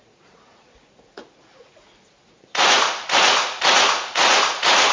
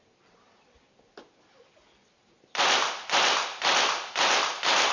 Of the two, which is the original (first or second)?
second